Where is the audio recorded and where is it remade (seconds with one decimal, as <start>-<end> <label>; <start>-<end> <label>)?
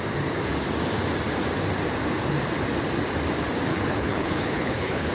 0.0-3.7 recorded; 3.7-5.1 remade